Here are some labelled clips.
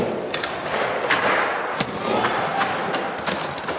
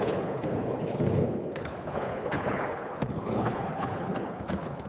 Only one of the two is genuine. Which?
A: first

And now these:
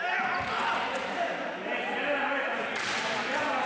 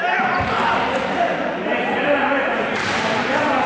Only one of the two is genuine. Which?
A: first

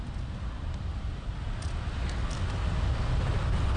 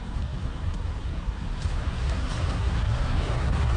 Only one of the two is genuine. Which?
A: first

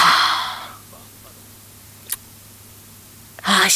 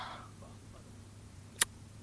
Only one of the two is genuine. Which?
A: first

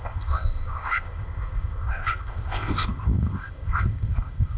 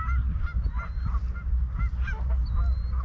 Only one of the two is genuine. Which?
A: second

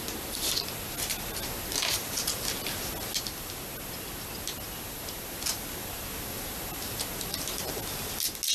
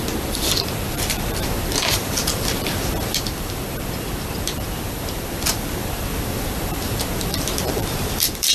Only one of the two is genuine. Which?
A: first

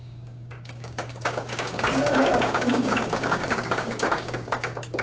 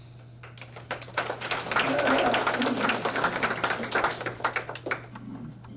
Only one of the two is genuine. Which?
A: second